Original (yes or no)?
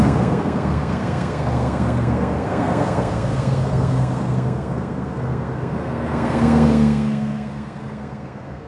no